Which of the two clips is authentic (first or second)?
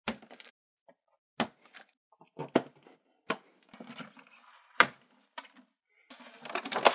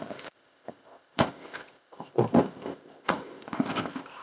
first